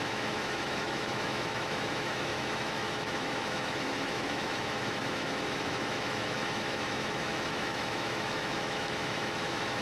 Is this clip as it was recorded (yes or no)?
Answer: no